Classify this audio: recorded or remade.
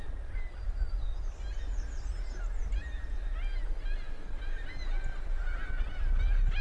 recorded